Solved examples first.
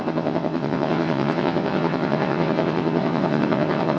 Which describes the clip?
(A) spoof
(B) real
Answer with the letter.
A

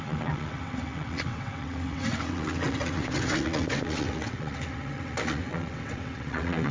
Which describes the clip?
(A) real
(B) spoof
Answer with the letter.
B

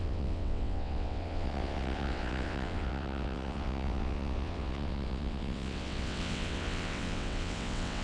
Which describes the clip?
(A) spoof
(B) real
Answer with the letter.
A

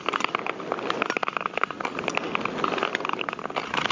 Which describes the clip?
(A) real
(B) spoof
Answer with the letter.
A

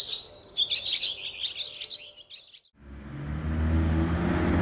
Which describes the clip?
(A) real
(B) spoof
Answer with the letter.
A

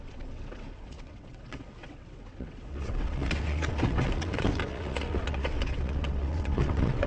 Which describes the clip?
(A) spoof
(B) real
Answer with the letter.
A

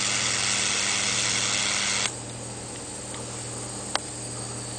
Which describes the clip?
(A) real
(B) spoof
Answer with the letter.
A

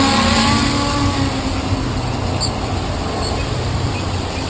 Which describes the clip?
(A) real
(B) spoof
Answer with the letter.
A